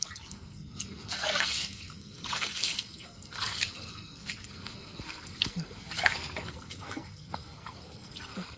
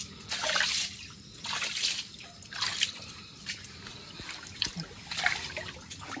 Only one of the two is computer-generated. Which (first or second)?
first